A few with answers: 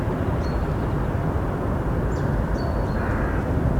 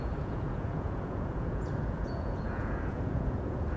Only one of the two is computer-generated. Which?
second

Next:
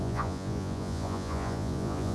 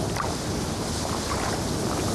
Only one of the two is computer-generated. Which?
first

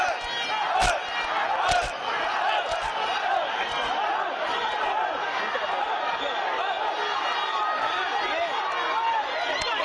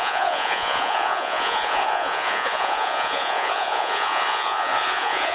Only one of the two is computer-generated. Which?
second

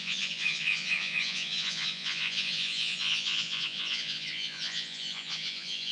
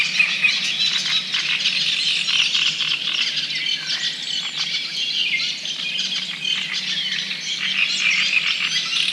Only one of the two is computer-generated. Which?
first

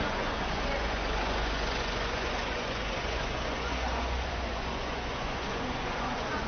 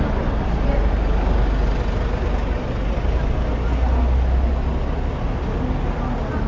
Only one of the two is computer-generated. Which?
first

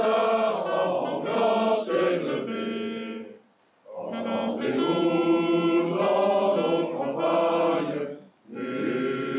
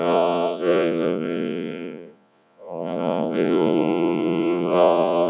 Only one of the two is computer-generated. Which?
second